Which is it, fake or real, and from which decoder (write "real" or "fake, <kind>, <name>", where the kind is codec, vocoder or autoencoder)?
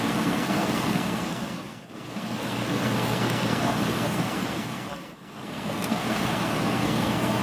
fake, codec, SNAC